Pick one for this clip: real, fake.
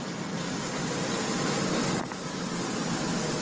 real